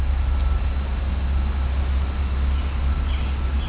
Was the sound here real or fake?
real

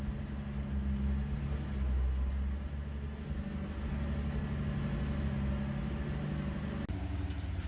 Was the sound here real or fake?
real